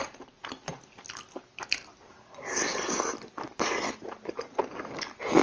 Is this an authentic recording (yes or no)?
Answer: yes